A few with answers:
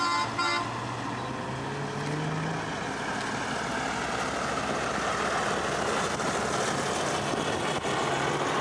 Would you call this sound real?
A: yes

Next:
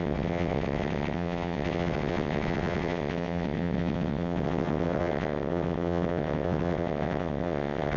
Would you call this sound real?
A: no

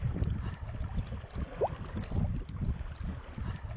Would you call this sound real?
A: yes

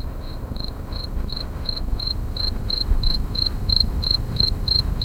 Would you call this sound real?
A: no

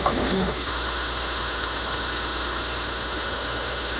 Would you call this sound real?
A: no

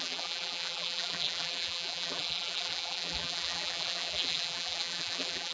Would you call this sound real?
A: no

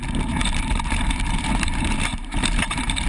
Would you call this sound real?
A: no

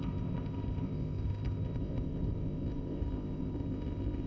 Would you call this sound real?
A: no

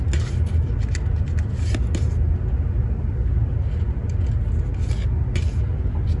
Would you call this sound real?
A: yes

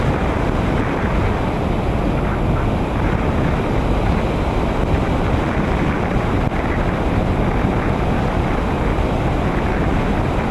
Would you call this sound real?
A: yes